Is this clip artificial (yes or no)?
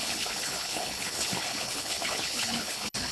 yes